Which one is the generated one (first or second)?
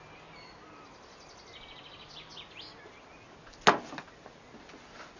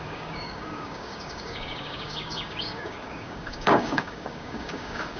second